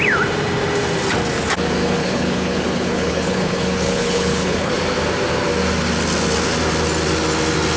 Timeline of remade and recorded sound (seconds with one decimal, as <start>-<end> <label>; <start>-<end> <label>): 0.0-1.8 recorded; 1.8-4.7 remade; 4.7-7.8 recorded